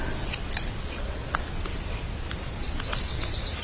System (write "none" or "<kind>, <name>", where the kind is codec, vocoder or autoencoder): none